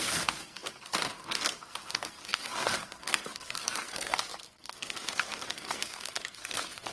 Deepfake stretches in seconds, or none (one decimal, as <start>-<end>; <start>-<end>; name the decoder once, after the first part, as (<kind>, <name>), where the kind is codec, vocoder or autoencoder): 0.0-6.9 (codec, SNAC)